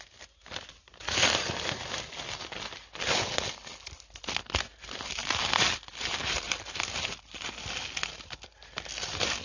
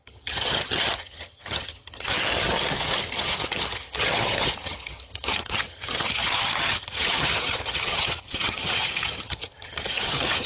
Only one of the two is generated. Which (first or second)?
second